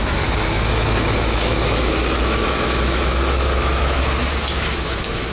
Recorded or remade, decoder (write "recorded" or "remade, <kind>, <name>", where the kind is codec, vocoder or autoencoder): remade, autoencoder, DAC-VAE